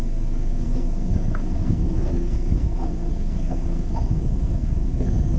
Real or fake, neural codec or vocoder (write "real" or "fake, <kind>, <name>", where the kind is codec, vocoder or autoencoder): fake, codec, SNAC